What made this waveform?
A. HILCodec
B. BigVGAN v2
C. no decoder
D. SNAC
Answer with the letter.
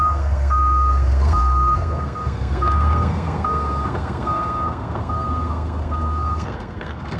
D